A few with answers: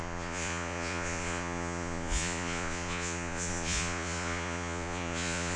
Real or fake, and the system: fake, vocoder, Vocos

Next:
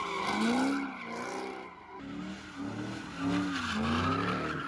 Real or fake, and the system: real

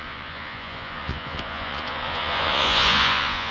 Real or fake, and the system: fake, vocoder, Vocos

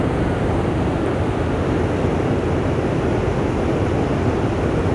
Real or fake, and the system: real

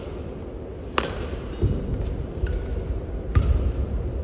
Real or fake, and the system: real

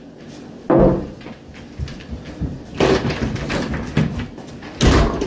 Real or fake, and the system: real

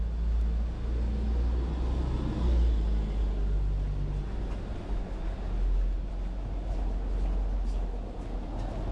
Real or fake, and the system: real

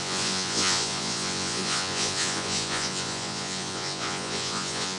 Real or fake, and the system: fake, vocoder, Vocos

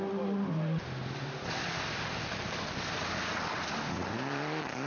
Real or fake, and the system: real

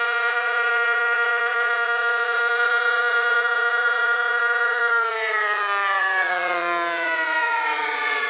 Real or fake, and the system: fake, vocoder, Vocos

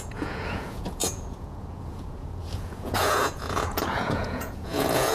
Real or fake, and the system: fake, vocoder, Vocos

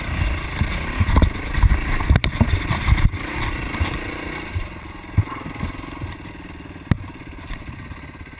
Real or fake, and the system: real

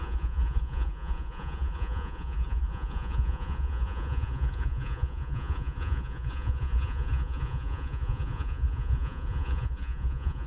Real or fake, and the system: fake, vocoder, Vocos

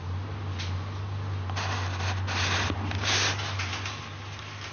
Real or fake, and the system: real